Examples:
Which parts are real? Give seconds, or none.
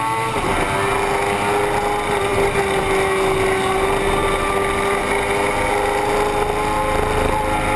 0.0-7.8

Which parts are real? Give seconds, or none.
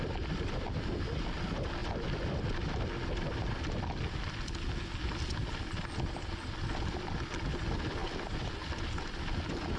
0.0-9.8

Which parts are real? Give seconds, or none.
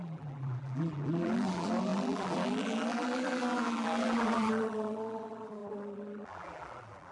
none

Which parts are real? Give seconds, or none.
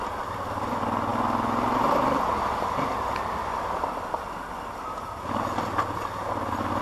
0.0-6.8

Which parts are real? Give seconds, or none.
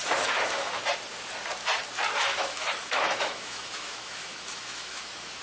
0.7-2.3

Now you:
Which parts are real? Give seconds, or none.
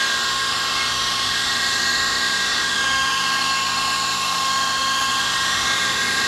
none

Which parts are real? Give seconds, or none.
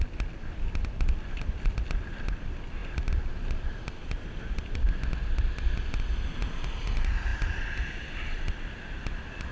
2.8-3.9